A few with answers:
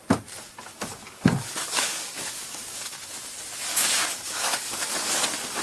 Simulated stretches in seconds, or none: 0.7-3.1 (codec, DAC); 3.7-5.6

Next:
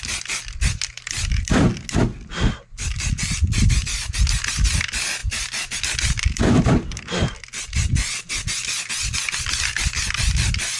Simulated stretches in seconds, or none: none